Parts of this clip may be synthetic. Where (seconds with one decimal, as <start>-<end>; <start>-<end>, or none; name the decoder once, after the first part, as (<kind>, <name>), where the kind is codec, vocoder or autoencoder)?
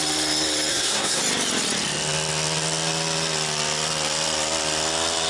0.7-1.2 (codec, SNAC)